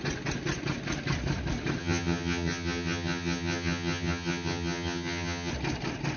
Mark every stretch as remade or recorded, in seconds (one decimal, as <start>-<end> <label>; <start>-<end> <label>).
0.0-1.8 recorded; 1.8-5.5 remade; 5.5-6.2 recorded